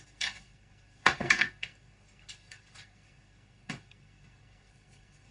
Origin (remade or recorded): remade